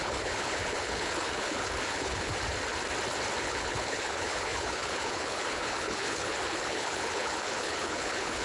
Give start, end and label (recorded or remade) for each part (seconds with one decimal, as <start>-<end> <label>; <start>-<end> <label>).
0.0-2.3 remade; 2.3-3.4 recorded; 3.4-8.4 remade